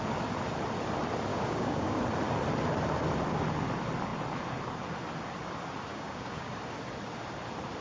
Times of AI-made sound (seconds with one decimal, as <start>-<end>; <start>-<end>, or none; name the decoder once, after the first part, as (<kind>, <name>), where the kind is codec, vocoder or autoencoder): 1.3-2.0 (codec, DAC); 5.9-6.5